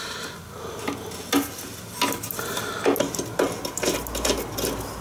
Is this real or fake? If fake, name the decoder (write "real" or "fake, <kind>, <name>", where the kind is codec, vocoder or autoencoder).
real